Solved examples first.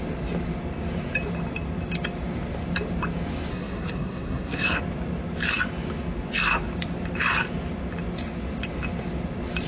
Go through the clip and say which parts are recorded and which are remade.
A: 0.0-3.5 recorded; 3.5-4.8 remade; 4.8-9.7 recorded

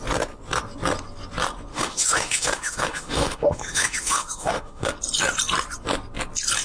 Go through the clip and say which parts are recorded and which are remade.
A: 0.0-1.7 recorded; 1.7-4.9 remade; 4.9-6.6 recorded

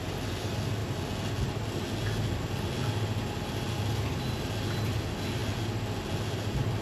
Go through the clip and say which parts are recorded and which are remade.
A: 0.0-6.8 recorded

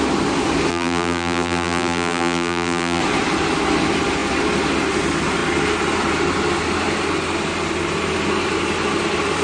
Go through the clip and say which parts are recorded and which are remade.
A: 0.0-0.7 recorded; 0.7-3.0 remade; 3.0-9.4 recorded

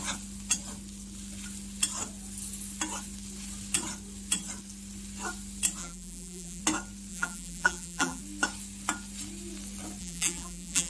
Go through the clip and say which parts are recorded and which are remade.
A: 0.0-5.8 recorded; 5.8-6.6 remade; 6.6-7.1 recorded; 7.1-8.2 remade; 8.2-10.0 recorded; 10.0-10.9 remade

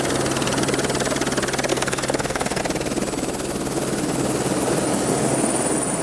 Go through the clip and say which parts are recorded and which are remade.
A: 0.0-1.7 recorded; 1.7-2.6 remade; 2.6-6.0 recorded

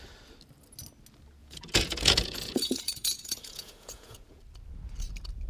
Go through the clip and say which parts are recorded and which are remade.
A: 0.0-1.4 recorded; 1.4-4.4 remade; 4.4-5.5 recorded